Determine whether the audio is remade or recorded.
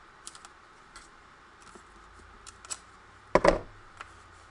recorded